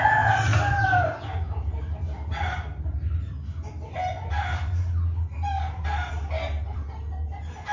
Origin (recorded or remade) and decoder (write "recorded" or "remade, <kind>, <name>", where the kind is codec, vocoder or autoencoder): recorded